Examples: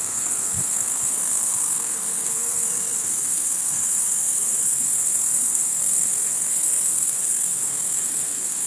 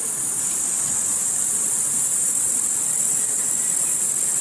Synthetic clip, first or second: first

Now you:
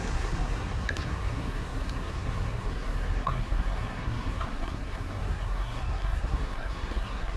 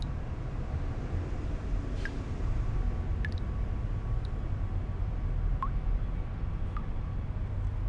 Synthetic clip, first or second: first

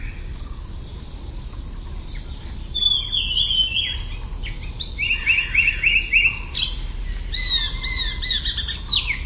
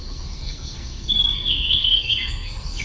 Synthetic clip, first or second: second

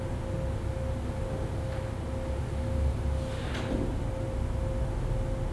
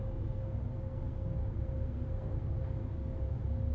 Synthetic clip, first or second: second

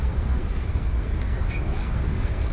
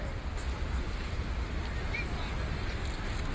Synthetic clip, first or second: first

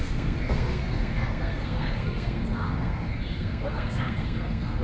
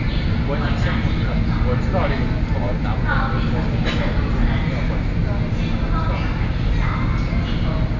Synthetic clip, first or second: first